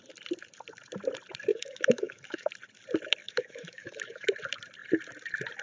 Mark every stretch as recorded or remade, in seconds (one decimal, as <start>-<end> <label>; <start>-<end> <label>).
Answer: 0.0-1.5 recorded; 1.5-2.5 remade; 2.5-3.2 recorded; 3.2-4.3 remade; 4.3-5.6 recorded